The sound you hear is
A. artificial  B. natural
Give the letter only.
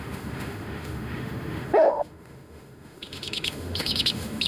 A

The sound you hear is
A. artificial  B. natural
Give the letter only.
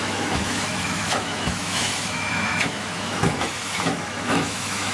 A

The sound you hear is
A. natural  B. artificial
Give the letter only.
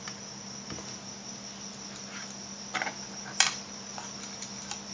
A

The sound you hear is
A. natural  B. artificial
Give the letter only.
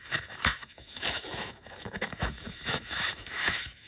B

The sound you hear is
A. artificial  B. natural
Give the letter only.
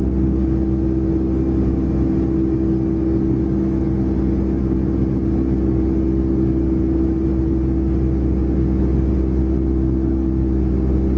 B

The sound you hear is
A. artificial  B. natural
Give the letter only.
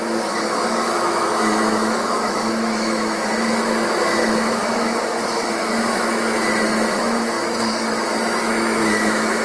A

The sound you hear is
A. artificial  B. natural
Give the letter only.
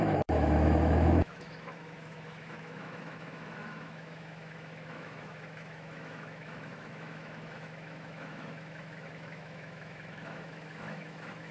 A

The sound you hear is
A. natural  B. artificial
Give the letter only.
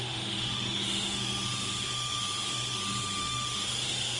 B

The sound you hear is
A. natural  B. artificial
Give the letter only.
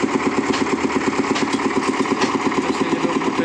A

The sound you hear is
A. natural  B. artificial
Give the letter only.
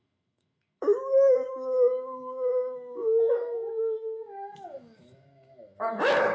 B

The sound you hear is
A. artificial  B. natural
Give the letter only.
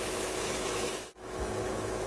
A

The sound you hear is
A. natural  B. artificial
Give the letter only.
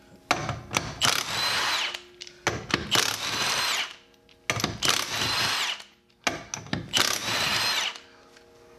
A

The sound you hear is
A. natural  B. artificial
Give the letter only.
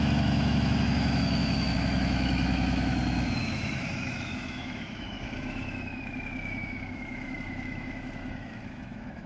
B